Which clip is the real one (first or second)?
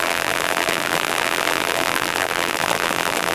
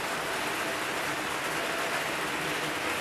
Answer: second